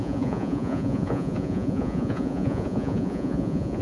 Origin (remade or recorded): remade